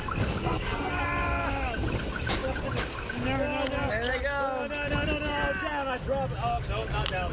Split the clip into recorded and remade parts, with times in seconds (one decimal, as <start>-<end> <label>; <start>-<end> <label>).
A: 0.0-0.4 recorded; 0.4-1.0 remade; 1.0-7.3 recorded